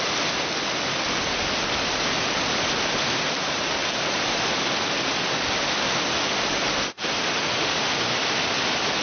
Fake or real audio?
real